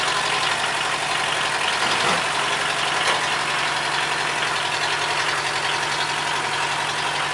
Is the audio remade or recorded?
recorded